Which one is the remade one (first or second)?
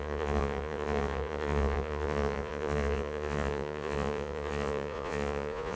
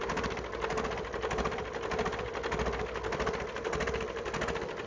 first